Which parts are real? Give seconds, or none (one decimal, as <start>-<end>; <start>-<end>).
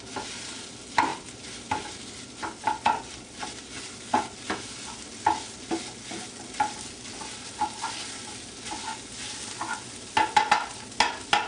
0.0-11.5